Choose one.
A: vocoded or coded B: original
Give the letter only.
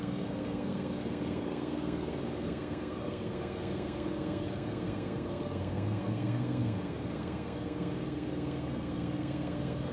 A